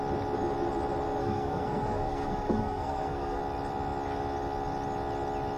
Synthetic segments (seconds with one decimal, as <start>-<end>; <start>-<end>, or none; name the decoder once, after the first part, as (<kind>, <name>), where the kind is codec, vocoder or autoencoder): 1.2-3.4 (codec, SNAC)